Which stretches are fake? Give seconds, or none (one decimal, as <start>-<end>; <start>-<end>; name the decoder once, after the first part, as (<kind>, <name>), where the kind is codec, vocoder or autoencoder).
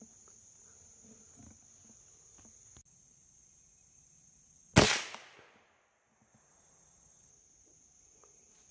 none